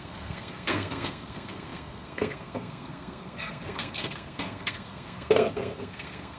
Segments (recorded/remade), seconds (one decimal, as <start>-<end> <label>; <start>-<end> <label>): 0.0-6.4 remade